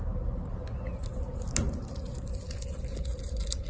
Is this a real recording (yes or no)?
yes